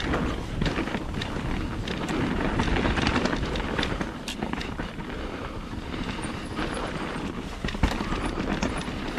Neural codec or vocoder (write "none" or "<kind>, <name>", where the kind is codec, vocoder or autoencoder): vocoder, BigVGAN v2